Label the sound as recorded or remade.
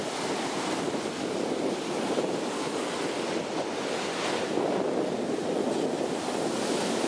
recorded